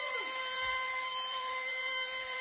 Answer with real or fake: fake